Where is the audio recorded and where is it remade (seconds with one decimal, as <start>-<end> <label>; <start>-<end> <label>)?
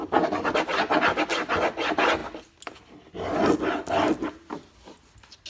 0.0-5.5 recorded